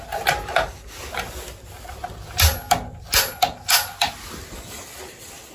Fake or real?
real